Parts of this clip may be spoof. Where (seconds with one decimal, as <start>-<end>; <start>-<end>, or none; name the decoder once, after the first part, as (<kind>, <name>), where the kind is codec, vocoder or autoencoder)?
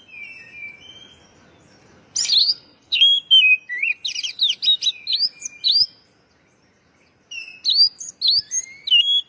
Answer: 2.4-3.0 (codec, HILCodec)